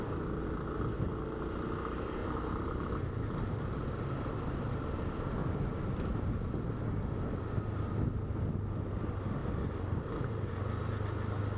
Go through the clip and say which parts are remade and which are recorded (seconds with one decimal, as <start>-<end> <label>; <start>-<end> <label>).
0.0-2.2 recorded; 2.2-4.4 remade; 4.4-11.6 recorded